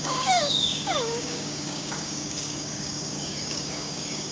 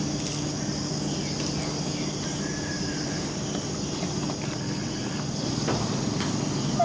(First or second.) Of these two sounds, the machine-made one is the first